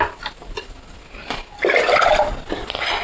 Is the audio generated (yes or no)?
no